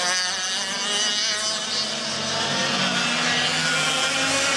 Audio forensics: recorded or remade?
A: recorded